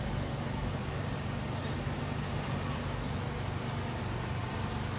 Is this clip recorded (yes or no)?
yes